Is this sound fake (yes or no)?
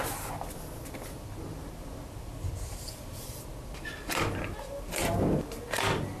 no